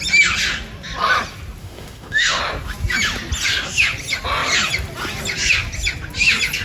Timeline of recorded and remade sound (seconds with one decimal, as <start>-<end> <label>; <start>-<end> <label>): 0.0-1.6 recorded; 1.6-2.4 remade; 2.4-6.6 recorded